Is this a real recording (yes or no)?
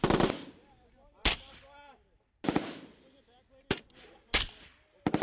yes